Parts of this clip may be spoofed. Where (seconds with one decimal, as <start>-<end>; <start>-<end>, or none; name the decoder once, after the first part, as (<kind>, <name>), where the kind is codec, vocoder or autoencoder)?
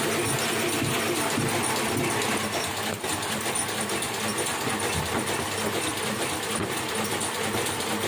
none